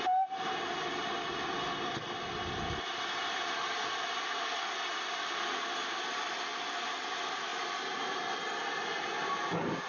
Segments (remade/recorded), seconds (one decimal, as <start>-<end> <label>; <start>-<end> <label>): 0.0-9.9 recorded